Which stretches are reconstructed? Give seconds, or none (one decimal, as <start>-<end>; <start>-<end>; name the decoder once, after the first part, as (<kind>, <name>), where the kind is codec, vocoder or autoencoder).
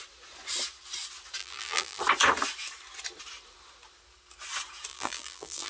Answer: 1.4-2.0 (vocoder, BigVGAN v2); 4.9-5.7